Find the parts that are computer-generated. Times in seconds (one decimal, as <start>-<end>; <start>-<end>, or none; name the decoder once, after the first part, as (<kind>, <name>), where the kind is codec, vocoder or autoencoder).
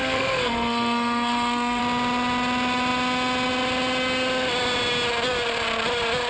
0.0-1.8 (codec, SNAC)